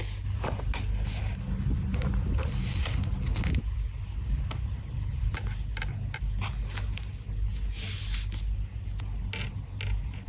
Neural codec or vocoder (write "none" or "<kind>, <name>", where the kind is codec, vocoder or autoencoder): none